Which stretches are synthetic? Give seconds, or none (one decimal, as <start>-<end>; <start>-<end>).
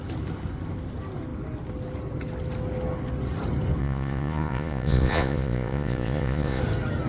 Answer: 3.8-6.6